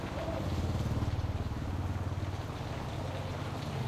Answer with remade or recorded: recorded